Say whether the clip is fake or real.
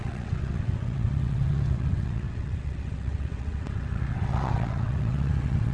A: fake